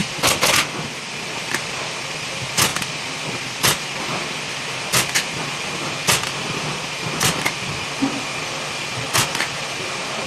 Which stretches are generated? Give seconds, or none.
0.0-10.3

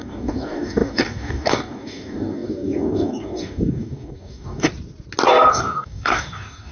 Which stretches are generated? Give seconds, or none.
0.0-4.7; 5.5-6.7

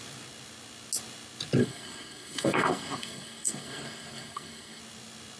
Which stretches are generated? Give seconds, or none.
1.6-4.8